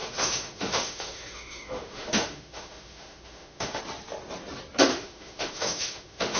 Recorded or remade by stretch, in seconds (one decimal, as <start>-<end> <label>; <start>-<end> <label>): 0.0-3.8 remade; 3.8-4.9 recorded; 4.9-6.4 remade